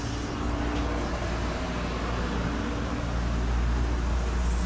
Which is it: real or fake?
real